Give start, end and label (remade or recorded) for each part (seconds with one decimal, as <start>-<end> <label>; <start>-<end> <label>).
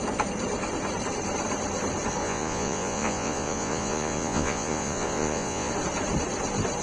0.0-2.2 recorded; 2.2-5.7 remade; 5.7-6.8 recorded